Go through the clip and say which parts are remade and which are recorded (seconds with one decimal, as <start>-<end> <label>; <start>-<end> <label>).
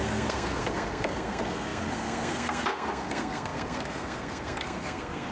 0.0-5.3 remade